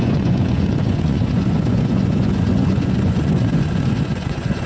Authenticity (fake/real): fake